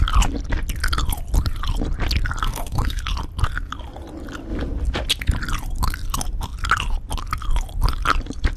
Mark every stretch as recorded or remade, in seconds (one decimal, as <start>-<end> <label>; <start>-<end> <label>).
0.0-2.4 recorded; 2.4-3.0 remade; 3.0-8.6 recorded

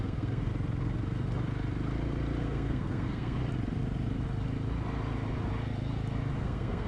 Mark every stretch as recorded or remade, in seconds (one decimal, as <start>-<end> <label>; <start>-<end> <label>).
0.0-0.5 remade; 0.5-2.4 recorded; 2.4-3.4 remade; 3.4-6.3 recorded; 6.3-6.9 remade

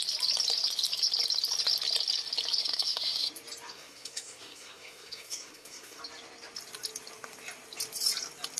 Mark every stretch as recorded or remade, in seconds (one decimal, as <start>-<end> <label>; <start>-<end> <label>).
0.0-2.6 recorded; 2.6-3.3 remade; 3.3-3.7 recorded; 3.7-6.0 remade; 6.0-8.6 recorded

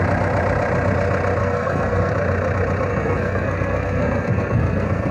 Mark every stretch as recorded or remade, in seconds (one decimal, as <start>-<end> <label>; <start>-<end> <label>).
0.0-1.4 recorded; 1.4-2.1 remade; 2.1-2.9 recorded; 2.9-5.1 remade

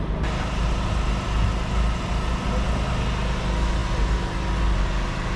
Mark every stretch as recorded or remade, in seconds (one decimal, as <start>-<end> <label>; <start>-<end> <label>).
0.0-5.4 recorded

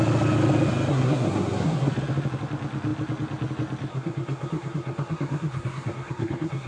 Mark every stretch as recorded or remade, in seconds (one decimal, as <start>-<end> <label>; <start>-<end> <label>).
0.0-0.9 recorded; 0.9-1.9 remade; 1.9-3.9 recorded; 3.9-6.7 remade